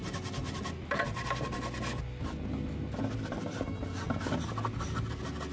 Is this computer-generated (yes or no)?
no